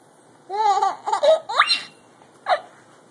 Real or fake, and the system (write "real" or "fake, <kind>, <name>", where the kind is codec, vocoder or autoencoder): real